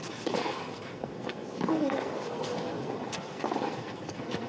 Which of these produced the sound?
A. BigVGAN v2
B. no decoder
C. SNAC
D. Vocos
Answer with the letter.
C